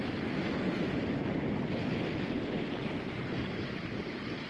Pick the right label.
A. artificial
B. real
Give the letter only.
B